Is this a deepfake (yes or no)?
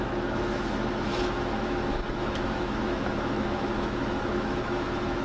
yes